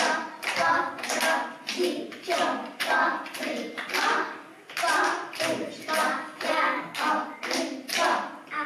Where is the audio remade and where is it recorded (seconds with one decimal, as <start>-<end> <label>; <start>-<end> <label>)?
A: 0.0-6.5 recorded; 6.5-7.1 remade; 7.1-8.7 recorded